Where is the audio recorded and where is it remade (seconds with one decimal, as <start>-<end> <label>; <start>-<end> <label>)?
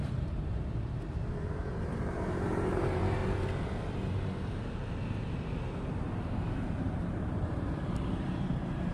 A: 0.0-3.2 remade; 3.2-7.1 recorded; 7.1-8.9 remade